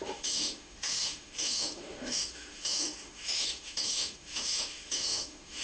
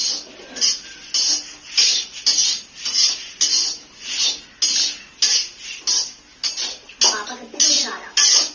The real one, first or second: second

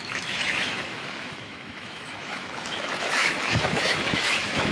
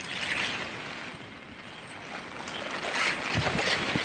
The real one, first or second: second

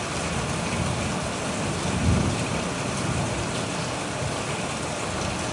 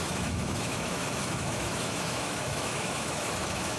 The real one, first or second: first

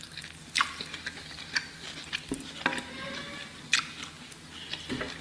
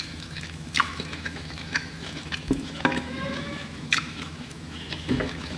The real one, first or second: first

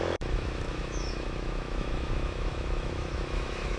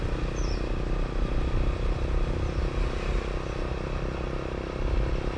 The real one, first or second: second